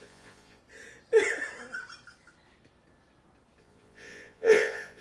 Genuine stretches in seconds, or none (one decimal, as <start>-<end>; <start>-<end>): 0.6-3.6